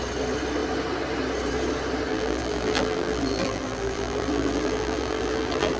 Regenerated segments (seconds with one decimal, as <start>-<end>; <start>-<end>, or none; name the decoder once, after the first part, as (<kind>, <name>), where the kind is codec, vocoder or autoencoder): 2.1-5.8 (vocoder, BigVGAN v2)